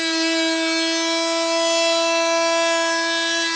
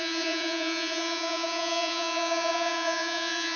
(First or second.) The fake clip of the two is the second